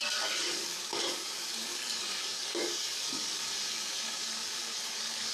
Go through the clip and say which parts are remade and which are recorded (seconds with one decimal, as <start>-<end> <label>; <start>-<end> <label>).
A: 0.0-5.3 remade